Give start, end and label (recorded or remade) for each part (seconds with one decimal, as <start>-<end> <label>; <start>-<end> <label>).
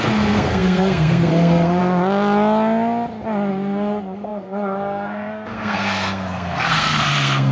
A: 0.0-1.8 remade; 1.8-3.5 recorded; 3.5-7.5 remade